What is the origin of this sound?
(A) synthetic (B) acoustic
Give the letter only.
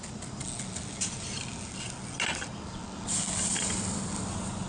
B